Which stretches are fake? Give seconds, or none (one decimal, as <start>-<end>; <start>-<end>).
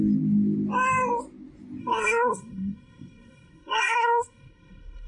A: 1.8-5.1